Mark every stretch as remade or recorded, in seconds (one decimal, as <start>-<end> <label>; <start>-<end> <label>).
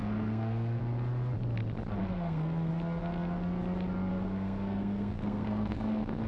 0.0-0.8 remade; 0.8-2.0 recorded; 2.0-2.7 remade; 2.7-4.1 recorded; 4.1-6.3 remade